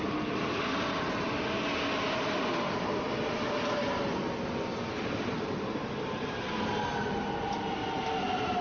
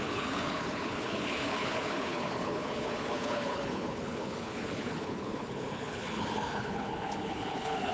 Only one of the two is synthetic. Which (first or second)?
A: second